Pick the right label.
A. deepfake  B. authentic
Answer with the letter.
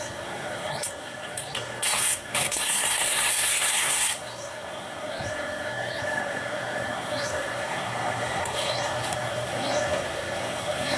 A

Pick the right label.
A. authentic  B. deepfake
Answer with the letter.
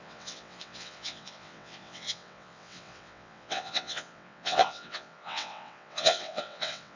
B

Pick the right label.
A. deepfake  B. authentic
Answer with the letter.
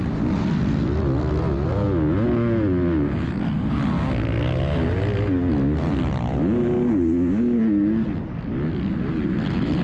B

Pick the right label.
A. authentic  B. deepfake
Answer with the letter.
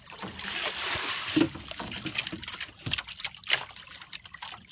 A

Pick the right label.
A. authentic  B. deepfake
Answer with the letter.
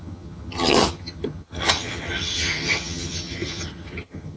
B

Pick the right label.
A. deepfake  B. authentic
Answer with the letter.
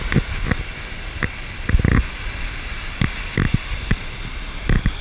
B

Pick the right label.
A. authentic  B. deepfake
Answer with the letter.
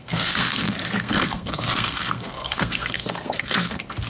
B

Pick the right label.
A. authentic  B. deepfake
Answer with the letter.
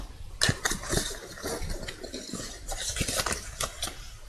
A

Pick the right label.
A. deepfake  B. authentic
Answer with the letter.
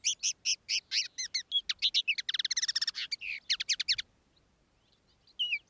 B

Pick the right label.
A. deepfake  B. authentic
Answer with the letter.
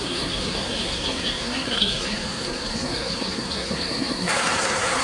A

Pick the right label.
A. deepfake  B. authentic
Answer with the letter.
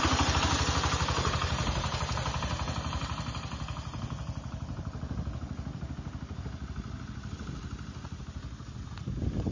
B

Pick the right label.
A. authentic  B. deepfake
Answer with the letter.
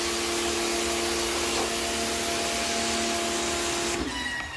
A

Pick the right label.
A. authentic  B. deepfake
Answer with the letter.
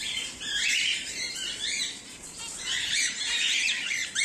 B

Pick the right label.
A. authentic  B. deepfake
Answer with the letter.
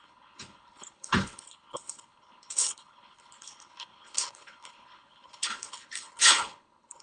B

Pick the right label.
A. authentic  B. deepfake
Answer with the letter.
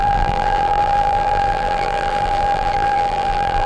B